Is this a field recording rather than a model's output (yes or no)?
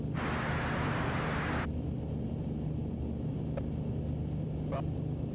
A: yes